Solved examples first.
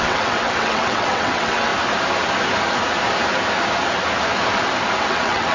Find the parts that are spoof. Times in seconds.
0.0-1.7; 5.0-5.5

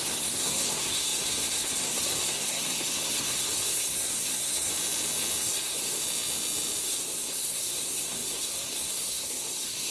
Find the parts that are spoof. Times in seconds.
0.0-4.7; 5.4-6.0; 6.8-9.9

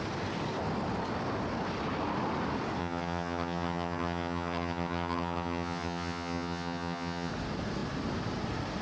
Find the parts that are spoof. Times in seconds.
2.8-7.3